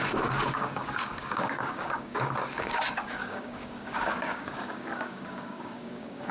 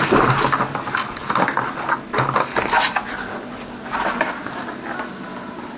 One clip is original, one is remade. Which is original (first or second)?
second